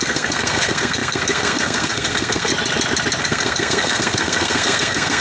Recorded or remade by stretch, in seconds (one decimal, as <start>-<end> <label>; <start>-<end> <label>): 0.0-2.5 remade; 2.5-3.2 recorded; 3.2-5.2 remade